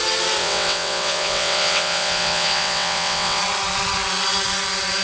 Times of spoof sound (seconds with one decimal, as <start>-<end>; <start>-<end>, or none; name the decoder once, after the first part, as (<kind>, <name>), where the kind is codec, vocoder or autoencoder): 0.4-3.4 (vocoder, WaveNeXt)